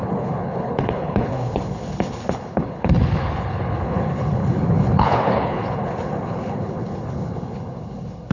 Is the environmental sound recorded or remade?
remade